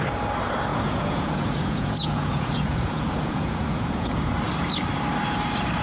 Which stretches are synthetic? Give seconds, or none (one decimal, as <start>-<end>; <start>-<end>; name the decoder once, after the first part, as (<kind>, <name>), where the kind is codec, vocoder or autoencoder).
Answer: 0.7-4.2 (vocoder, Vocos)